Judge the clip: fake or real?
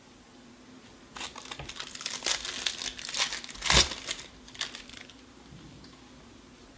real